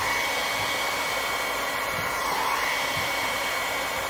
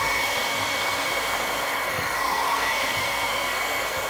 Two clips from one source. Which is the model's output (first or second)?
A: second